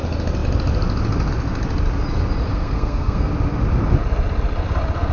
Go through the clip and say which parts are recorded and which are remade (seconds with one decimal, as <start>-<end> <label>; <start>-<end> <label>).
0.0-2.5 recorded; 2.5-3.3 remade; 3.3-5.1 recorded